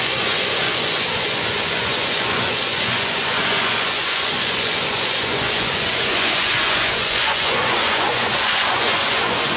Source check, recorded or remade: remade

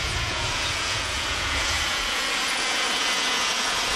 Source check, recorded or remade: remade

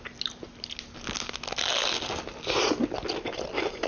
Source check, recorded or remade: recorded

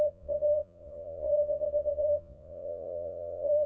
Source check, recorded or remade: remade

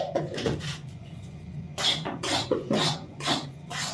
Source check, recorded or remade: remade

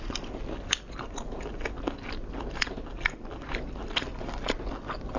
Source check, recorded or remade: recorded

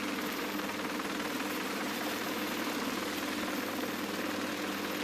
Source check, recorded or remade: recorded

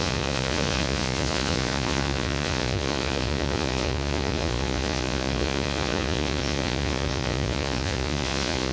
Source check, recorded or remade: remade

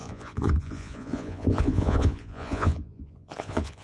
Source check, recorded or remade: remade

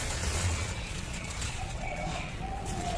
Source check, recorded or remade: remade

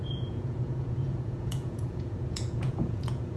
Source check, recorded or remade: remade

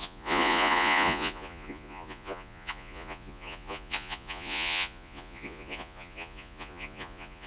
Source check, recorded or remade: remade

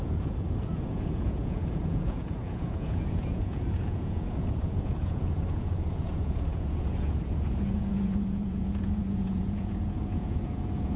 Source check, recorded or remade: remade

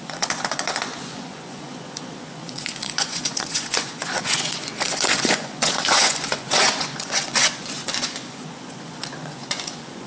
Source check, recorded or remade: remade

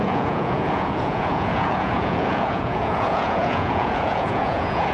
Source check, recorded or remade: remade